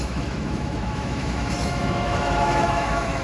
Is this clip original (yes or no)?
no